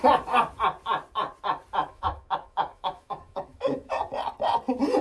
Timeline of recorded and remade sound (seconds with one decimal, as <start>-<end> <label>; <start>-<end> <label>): 0.0-1.8 recorded; 1.8-3.9 remade; 3.9-5.0 recorded